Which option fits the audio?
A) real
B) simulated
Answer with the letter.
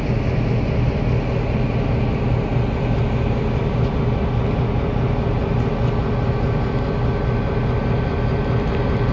A